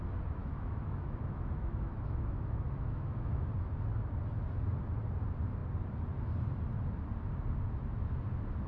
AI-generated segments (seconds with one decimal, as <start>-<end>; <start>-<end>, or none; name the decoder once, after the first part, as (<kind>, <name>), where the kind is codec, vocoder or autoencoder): 0.4-3.5 (autoencoder, DAC-VAE)